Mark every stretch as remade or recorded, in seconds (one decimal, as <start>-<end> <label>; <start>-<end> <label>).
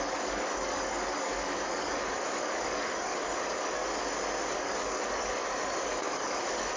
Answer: 0.0-3.8 remade; 3.8-4.5 recorded; 4.5-6.8 remade